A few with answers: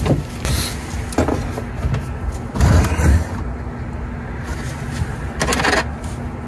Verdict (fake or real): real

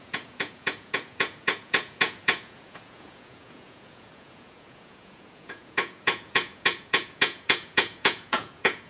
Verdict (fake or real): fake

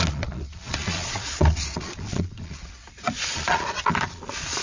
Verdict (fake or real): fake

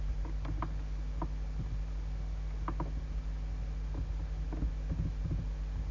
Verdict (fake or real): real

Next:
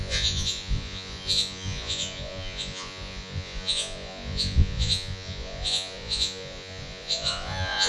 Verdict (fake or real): fake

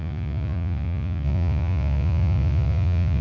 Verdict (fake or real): fake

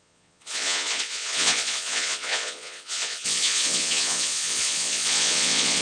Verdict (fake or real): fake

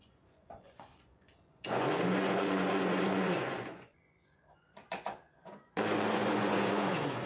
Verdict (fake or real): fake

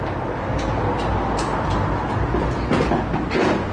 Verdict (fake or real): real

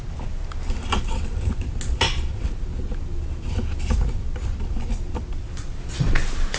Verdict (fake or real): real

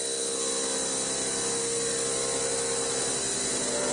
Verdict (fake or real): real